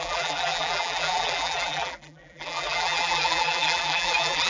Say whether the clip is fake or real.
fake